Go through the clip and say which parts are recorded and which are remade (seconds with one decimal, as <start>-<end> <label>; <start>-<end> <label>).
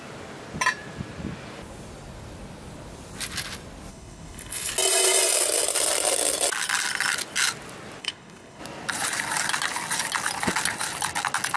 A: 0.0-3.9 recorded; 3.9-4.7 remade; 4.7-8.0 recorded; 8.0-8.6 remade; 8.6-11.6 recorded